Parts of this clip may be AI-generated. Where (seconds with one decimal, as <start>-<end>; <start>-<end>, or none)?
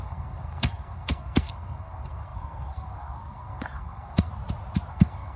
0.0-4.3; 4.9-5.4